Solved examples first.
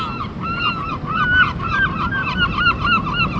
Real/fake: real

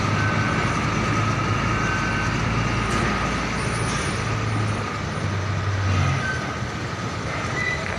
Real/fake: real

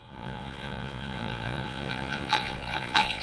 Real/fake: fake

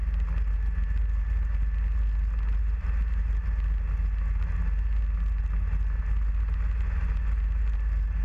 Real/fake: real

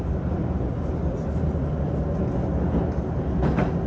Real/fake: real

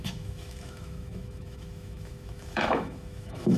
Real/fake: fake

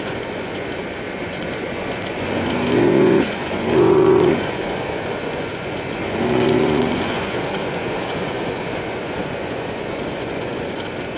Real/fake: fake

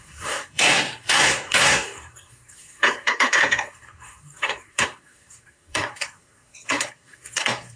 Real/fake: fake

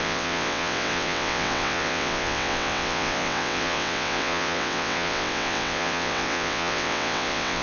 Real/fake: fake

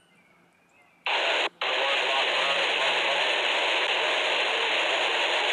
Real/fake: real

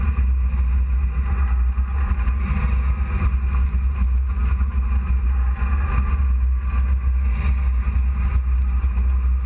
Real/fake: real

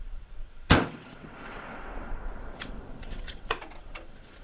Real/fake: fake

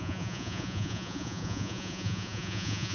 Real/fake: fake